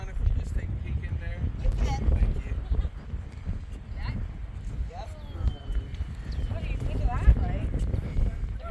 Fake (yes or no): no